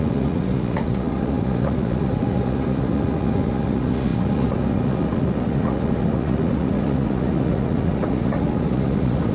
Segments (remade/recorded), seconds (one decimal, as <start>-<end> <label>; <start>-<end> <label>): 0.0-9.3 remade

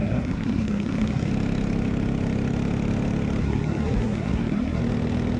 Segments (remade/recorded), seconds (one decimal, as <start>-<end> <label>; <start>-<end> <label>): 0.0-1.3 remade; 1.3-3.4 recorded; 3.4-4.8 remade; 4.8-5.4 recorded

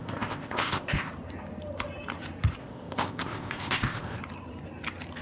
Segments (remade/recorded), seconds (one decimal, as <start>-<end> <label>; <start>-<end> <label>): 0.0-1.1 remade; 1.1-2.6 recorded; 2.6-4.2 remade; 4.2-5.2 recorded

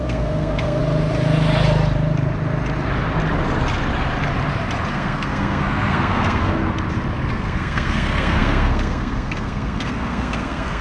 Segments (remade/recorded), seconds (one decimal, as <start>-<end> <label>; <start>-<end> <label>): 0.0-0.8 remade; 0.8-4.9 recorded; 4.9-6.6 remade; 6.6-7.3 recorded; 7.3-10.8 remade

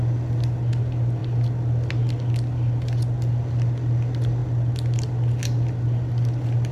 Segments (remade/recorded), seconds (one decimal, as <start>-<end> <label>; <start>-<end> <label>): 0.0-6.7 recorded

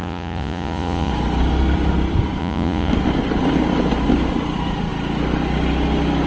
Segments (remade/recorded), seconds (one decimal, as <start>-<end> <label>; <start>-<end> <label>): 0.0-1.1 remade; 1.1-2.4 recorded; 2.4-2.9 remade; 2.9-6.3 recorded